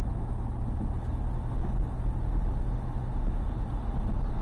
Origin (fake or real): real